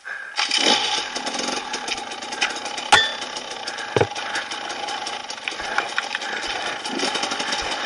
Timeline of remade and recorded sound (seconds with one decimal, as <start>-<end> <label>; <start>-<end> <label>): 0.0-7.9 recorded